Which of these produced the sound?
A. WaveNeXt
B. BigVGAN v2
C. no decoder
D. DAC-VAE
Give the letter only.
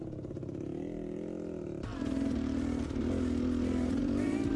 C